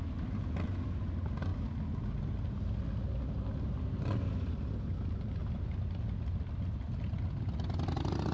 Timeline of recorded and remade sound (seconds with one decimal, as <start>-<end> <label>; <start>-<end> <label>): 0.0-8.3 recorded